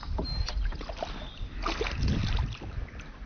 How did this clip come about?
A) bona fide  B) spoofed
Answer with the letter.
A